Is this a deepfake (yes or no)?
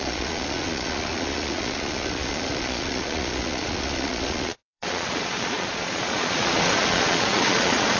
yes